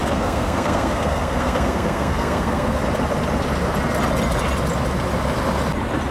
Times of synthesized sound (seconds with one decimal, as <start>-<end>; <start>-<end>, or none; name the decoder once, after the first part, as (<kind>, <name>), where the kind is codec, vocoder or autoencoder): 0.0-2.8 (codec, SNAC)